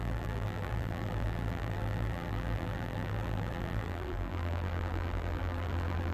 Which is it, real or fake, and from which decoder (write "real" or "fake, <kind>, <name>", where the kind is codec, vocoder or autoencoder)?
fake, vocoder, BigVGAN v2